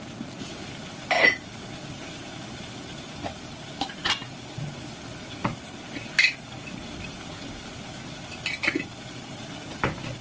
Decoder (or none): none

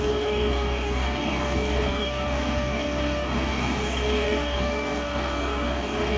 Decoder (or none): codec, DAC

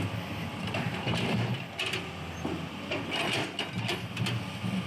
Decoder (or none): none